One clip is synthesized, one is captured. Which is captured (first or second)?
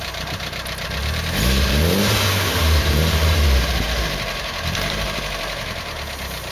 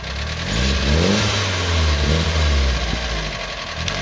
second